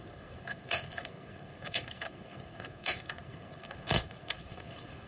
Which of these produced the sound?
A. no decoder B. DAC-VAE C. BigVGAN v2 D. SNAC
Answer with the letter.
D